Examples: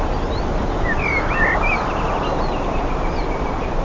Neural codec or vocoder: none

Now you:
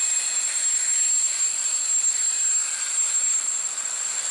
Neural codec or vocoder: none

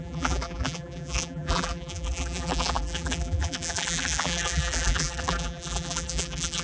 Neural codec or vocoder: vocoder, BigVGAN v2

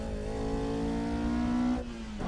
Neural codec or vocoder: none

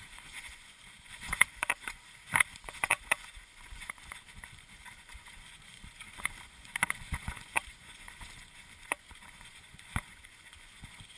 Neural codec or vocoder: vocoder, Vocos